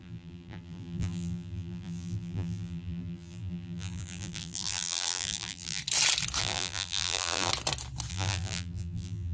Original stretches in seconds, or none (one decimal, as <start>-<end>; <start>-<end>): 5.8-6.4; 7.5-8.1